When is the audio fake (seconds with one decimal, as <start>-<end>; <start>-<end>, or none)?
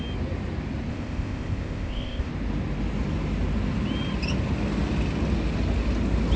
0.9-2.3